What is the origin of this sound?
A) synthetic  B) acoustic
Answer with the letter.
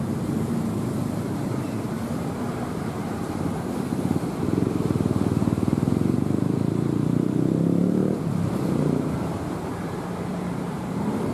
A